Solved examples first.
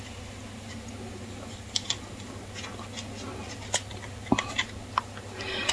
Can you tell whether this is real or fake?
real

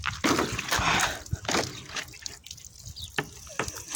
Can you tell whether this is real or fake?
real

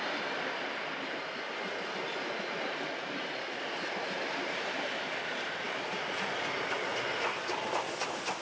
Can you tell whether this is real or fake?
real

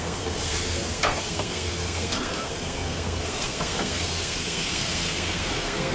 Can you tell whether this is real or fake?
fake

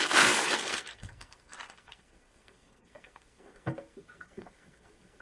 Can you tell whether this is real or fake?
fake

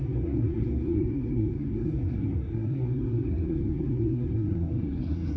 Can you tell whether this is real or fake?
fake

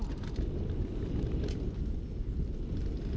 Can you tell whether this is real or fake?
real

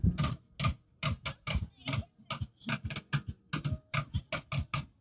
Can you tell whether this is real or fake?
real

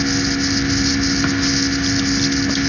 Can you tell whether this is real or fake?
real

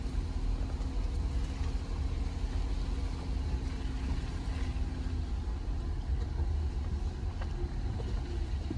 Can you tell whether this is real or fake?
real